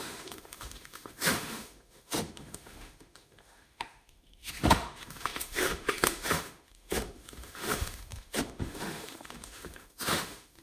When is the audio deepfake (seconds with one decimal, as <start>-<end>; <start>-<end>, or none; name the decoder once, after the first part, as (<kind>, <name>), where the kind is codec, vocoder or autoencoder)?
0.0-10.6 (autoencoder, DAC-VAE)